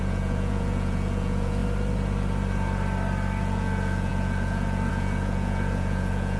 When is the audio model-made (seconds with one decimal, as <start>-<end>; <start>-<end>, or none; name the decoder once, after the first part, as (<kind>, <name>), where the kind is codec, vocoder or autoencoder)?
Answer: 0.0-1.6 (vocoder, Vocos); 3.4-6.4